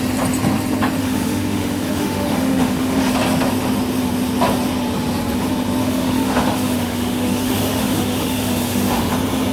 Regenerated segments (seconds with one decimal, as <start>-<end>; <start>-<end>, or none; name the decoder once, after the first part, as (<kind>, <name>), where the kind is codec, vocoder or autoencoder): 1.0-3.1 (autoencoder, DAC-VAE); 5.8-9.1